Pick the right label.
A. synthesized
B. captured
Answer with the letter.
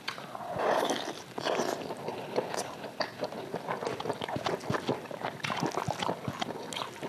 B